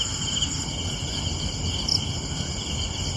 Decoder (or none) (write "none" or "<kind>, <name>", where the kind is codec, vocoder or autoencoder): none